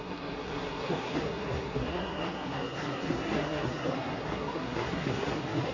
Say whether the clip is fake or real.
fake